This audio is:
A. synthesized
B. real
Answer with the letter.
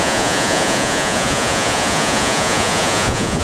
A